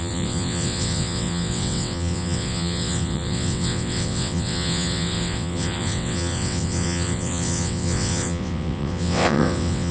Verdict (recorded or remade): remade